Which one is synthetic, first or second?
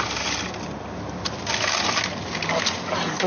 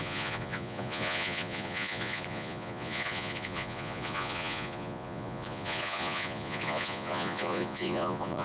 second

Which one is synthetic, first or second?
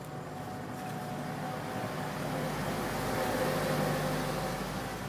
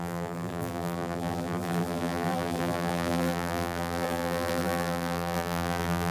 second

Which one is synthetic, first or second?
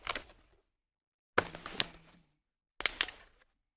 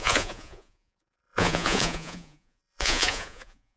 second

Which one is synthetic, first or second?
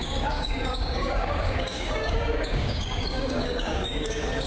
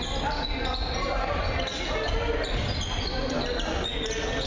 first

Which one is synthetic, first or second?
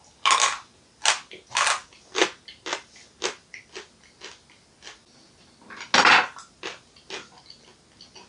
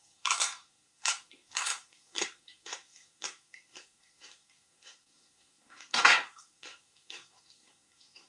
second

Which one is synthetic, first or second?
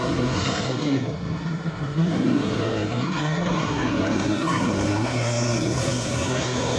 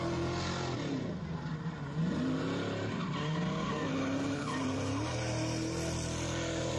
first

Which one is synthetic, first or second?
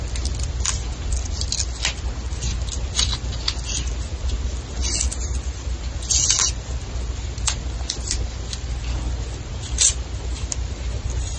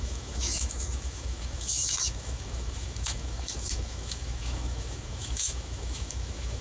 second